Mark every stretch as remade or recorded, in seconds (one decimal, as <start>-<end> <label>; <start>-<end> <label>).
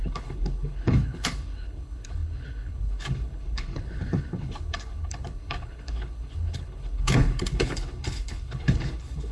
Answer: 0.0-9.3 remade